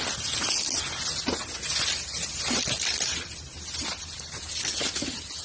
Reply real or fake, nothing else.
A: real